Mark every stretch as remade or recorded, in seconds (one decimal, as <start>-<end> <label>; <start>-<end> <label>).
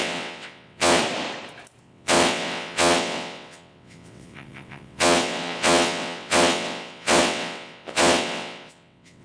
0.0-1.0 remade; 1.0-1.8 recorded; 1.8-9.2 remade